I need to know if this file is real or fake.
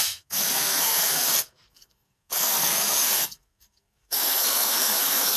fake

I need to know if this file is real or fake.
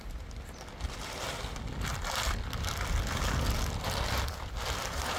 real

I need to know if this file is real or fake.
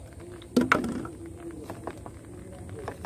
real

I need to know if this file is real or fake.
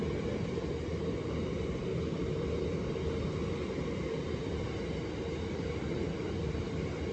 real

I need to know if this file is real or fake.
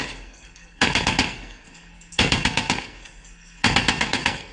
fake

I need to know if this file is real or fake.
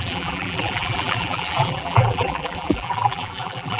fake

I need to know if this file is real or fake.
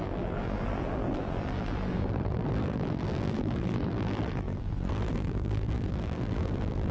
fake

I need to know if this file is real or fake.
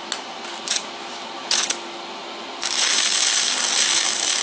real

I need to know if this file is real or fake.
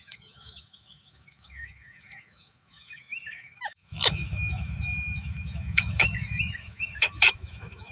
fake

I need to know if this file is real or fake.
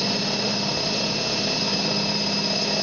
real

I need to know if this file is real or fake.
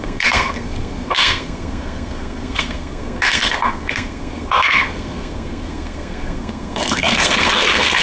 fake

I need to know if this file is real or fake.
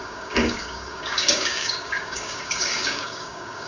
fake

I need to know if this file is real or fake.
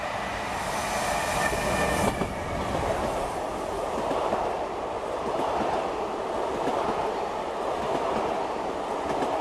real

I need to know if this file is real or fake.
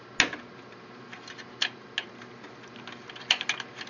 real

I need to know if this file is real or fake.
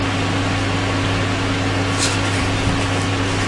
real